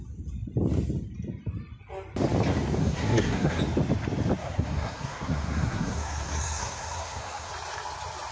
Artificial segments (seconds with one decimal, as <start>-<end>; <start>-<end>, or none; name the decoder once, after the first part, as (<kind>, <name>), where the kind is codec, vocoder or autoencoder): 2.8-3.6 (codec, SNAC); 4.4-7.5